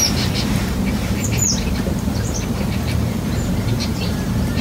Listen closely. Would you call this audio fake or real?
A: fake